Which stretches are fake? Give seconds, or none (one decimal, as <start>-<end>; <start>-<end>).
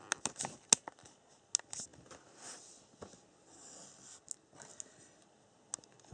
none